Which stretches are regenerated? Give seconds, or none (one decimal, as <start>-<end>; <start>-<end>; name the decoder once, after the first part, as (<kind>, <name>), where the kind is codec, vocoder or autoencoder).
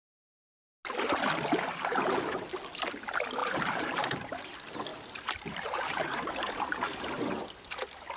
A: 3.4-4.5 (vocoder, BigVGAN v2); 4.9-6.3